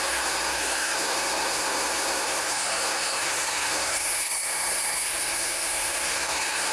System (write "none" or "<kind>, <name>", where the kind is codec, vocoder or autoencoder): codec, SNAC